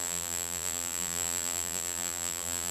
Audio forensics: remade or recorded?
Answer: remade